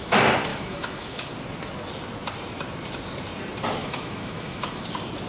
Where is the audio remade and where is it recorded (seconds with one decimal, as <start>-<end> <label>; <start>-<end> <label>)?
0.0-0.5 recorded; 0.5-1.3 remade; 1.3-3.8 recorded; 3.8-4.8 remade; 4.8-5.3 recorded